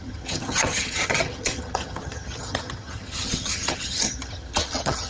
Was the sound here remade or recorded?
remade